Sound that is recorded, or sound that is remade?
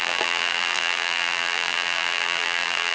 remade